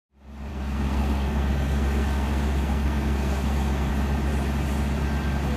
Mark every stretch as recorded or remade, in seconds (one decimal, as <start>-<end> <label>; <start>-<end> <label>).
0.0-0.5 recorded; 0.5-3.9 remade; 3.9-5.6 recorded